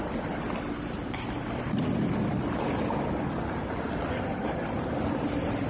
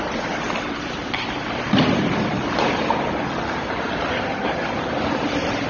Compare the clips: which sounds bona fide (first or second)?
first